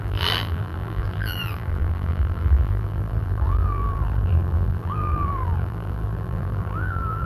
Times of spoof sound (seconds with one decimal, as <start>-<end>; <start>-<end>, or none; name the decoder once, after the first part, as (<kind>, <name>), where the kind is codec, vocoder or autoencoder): 0.0-7.3 (vocoder, BigVGAN v2)